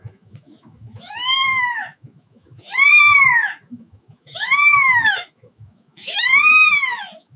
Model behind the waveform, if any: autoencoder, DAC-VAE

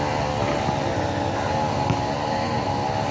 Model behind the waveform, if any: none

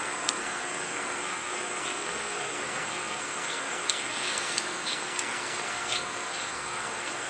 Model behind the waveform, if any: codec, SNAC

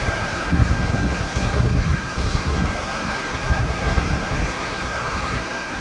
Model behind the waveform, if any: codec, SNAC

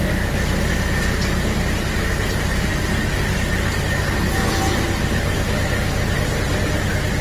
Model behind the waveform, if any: none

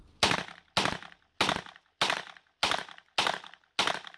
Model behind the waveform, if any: none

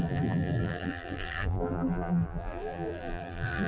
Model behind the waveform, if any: vocoder, BigVGAN v2